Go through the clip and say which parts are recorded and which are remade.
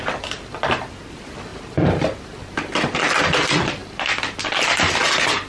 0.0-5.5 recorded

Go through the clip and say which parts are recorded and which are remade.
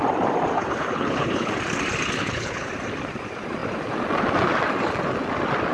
0.0-0.6 recorded; 0.6-1.5 remade; 1.5-2.2 recorded; 2.2-2.7 remade; 2.7-5.7 recorded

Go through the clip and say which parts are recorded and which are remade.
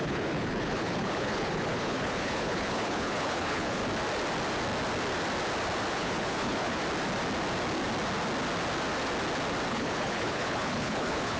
0.0-3.8 remade; 3.8-5.9 recorded; 5.9-6.8 remade; 6.8-9.7 recorded; 9.7-11.4 remade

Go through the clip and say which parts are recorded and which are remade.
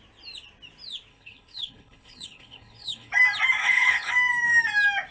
0.0-1.1 recorded; 1.1-3.1 remade; 3.1-3.6 recorded; 3.6-4.1 remade; 4.1-5.1 recorded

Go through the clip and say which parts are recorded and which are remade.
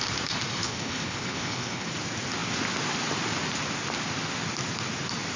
0.0-0.5 recorded; 0.5-1.9 remade; 1.9-5.4 recorded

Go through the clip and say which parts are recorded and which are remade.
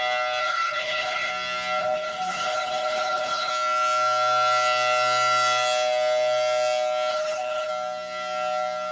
0.0-0.4 recorded; 0.4-1.3 remade; 1.3-1.8 recorded; 1.8-3.5 remade; 3.5-7.1 recorded; 7.1-7.7 remade; 7.7-8.9 recorded